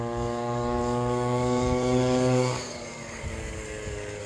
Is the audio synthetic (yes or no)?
yes